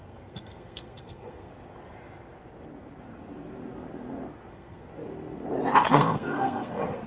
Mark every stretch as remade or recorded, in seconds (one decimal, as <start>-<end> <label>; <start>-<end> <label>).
0.0-1.5 remade; 1.5-4.5 recorded; 4.5-4.9 remade; 4.9-5.9 recorded; 5.9-7.1 remade